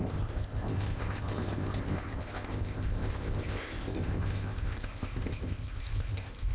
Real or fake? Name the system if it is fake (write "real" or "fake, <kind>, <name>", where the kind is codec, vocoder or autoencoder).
fake, codec, ZipCodec